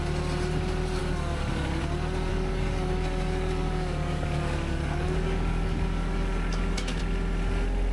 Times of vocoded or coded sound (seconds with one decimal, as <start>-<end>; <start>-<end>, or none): 1.0-1.8; 2.3-7.0